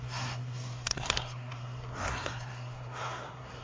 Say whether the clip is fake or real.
fake